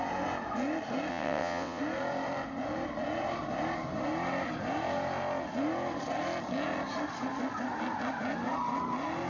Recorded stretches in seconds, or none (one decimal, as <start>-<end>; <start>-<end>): 0.0-1.1; 1.8-9.3